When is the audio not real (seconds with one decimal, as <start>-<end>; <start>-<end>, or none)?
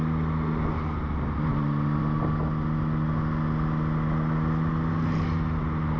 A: none